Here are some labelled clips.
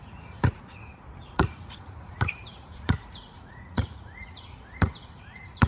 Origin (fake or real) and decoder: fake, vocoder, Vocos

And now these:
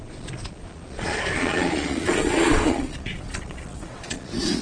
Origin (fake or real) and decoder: fake, vocoder, Vocos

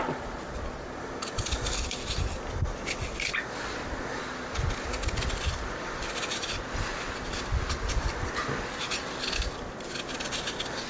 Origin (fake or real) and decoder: real